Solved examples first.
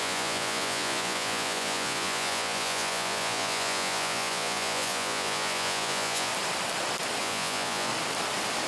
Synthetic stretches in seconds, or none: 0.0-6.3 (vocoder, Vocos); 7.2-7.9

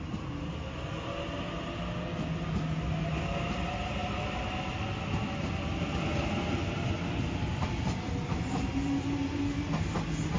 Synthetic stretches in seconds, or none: none

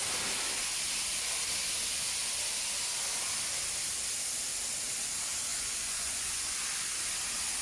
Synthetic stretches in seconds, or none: 5.5-6.5 (vocoder, Vocos)

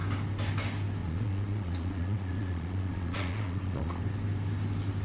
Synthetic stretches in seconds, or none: 1.0-4.0 (vocoder, Vocos)

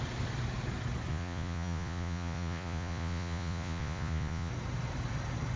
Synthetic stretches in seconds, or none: 1.1-4.5 (vocoder, Vocos)